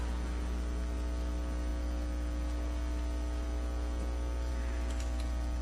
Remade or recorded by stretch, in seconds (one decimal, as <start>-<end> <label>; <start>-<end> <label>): 0.0-5.6 recorded